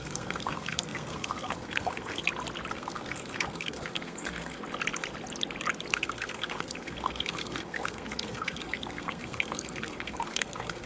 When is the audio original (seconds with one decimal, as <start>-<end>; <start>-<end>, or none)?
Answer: 2.2-2.7; 4.6-5.9